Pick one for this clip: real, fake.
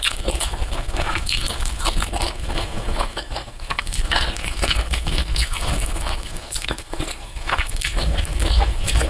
fake